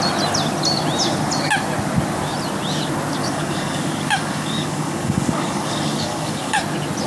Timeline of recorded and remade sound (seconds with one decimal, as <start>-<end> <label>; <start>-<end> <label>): 0.0-3.2 recorded; 3.2-6.6 remade; 6.6-7.1 recorded